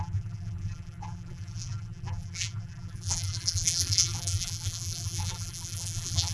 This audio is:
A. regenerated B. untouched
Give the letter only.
A